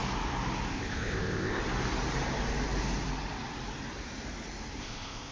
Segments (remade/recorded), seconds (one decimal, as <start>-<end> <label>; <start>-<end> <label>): 0.0-0.7 recorded; 0.7-1.6 remade; 1.6-4.8 recorded; 4.8-5.3 remade